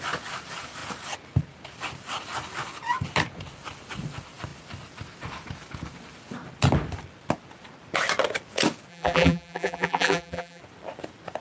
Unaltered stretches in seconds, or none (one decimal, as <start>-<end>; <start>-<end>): 0.0-8.9; 10.6-11.4